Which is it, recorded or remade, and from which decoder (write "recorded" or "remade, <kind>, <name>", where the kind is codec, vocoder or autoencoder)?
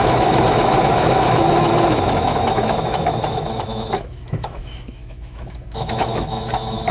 remade, autoencoder, DAC-VAE